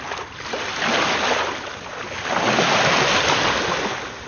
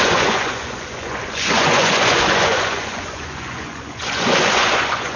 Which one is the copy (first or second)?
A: second